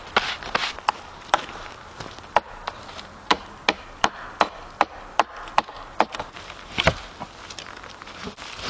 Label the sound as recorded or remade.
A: recorded